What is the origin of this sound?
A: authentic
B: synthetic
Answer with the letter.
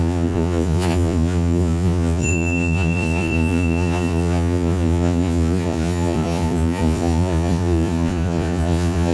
B